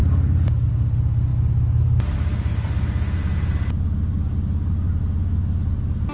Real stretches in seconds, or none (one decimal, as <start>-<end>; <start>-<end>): 0.0-6.1

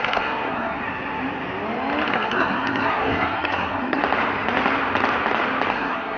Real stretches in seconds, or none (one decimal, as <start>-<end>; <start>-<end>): 0.8-2.1; 4.0-5.7

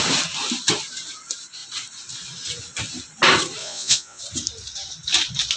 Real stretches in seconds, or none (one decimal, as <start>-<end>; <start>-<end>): 0.0-3.6; 4.2-5.6